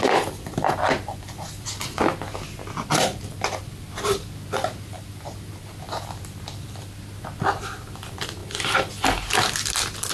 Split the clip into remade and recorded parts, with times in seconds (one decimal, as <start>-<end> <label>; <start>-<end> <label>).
0.0-10.1 recorded